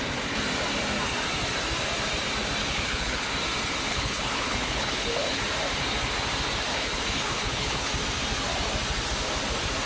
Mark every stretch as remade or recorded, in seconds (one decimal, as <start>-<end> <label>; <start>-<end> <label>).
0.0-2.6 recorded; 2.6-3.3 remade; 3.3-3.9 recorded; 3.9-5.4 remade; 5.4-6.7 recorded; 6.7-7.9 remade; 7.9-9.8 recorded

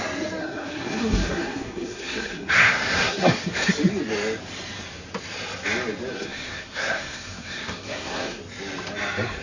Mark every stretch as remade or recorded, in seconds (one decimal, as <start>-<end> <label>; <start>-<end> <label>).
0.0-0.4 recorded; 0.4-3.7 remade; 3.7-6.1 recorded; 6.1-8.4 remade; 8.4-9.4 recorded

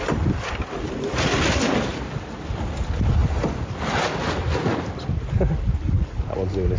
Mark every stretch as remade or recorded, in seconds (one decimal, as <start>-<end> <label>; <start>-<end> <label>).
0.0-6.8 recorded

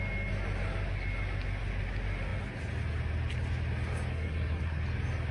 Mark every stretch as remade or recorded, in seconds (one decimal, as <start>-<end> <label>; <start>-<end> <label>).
0.0-4.1 recorded; 4.1-4.8 remade; 4.8-5.3 recorded

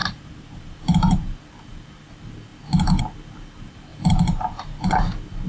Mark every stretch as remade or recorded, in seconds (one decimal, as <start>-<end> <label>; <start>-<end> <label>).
0.0-1.2 remade; 1.2-3.9 recorded; 3.9-5.0 remade; 5.0-5.5 recorded

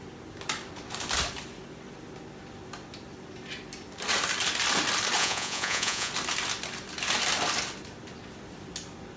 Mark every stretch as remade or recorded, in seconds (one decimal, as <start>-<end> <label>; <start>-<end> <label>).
0.0-5.2 recorded; 5.2-6.1 remade; 6.1-9.2 recorded

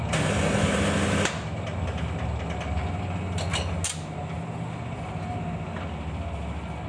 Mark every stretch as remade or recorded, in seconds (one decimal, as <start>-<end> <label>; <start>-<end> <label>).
0.0-6.9 recorded